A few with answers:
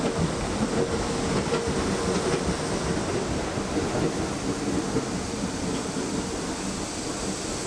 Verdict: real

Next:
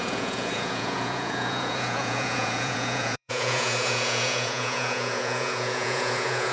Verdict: fake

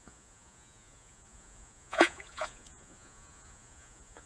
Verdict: fake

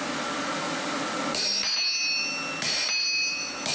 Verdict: real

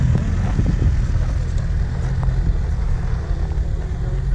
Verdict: real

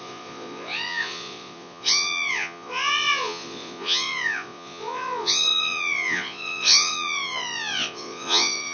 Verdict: fake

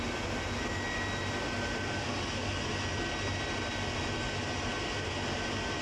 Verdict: real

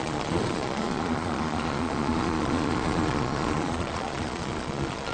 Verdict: fake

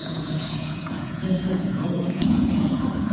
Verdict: fake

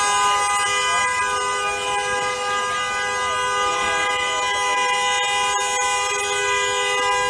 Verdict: real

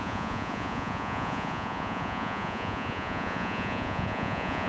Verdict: fake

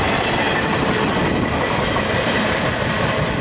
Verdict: real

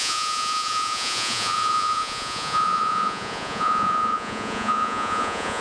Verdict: fake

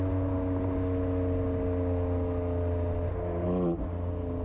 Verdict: real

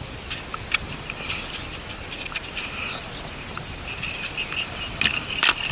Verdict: real